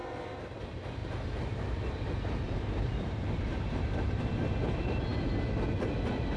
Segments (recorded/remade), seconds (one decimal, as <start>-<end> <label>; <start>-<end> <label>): 0.0-0.6 remade; 0.6-1.0 recorded; 1.0-4.2 remade; 4.2-6.4 recorded